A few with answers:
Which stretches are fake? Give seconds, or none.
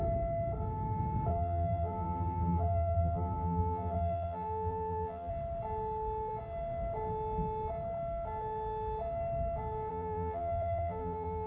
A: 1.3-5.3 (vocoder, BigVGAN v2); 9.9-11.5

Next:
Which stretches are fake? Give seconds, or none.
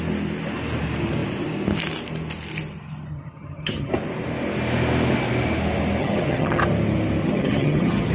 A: 3.1-3.9 (vocoder, HiFi-GAN); 6.0-6.6; 7.2-8.1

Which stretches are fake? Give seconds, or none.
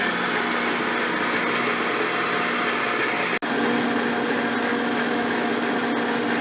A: 4.7-5.5 (autoencoder, DAC-VAE)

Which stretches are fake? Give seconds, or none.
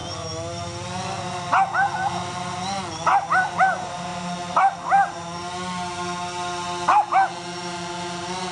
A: none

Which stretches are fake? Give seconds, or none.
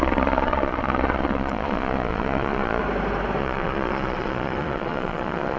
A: 0.0-2.8 (vocoder, Vocos); 3.4-5.6